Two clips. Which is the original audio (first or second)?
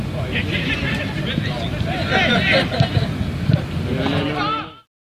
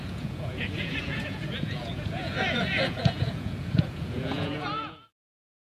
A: first